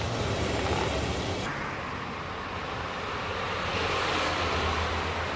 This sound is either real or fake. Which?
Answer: real